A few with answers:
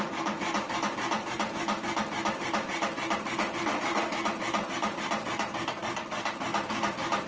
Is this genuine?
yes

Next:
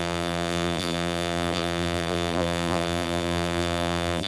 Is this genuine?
no